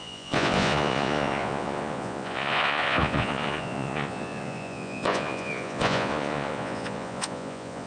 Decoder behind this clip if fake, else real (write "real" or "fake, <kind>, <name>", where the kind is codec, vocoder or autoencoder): fake, vocoder, Vocos